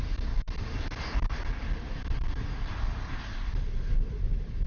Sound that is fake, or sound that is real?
real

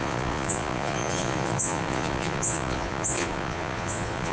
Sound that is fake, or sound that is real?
fake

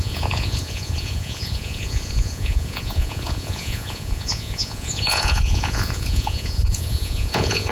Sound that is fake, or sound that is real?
fake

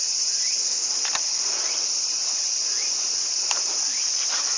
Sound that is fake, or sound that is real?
real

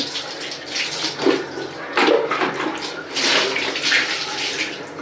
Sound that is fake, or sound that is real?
real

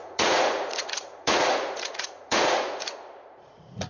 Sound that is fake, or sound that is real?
fake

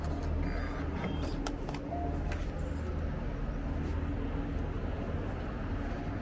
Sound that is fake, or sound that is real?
real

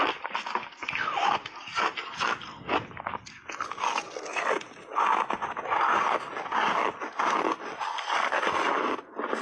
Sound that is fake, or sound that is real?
real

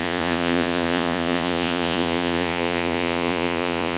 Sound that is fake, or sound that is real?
fake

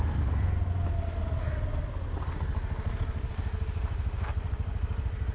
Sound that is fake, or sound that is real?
real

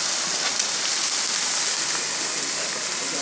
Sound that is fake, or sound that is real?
real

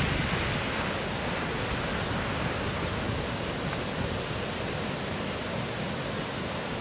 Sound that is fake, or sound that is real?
real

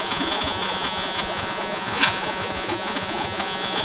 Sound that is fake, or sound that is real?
fake